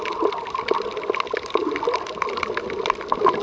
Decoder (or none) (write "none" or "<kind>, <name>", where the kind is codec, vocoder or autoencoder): none